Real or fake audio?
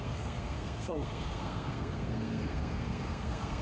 fake